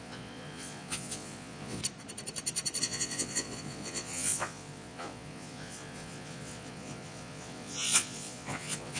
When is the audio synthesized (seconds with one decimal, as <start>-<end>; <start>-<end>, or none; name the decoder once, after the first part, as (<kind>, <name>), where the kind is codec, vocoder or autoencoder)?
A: 0.0-1.8 (vocoder, Vocos); 2.8-9.0